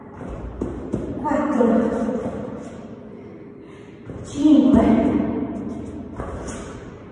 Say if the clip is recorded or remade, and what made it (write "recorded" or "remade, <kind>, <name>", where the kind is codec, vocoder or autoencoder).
remade, vocoder, BigVGAN v2